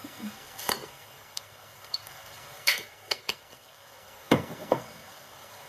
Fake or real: fake